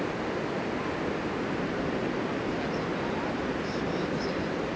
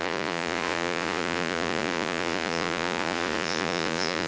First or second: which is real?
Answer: first